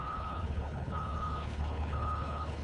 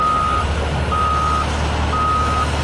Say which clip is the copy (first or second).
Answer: first